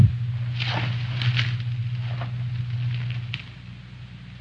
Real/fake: real